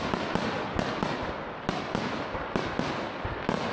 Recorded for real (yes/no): yes